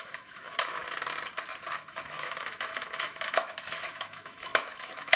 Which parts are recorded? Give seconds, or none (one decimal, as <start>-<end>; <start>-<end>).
0.8-1.7